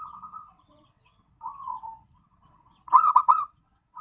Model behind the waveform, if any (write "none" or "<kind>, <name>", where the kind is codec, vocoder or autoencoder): vocoder, WaveNeXt